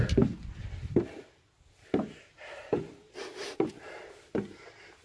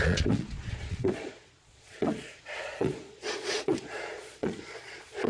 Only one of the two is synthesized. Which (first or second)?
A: second